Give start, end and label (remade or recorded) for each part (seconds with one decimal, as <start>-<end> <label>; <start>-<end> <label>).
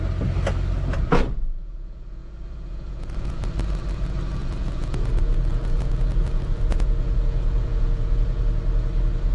0.0-1.6 recorded; 1.6-3.4 remade; 3.4-4.4 recorded; 4.4-5.1 remade; 5.1-5.5 recorded; 5.5-8.4 remade; 8.4-9.3 recorded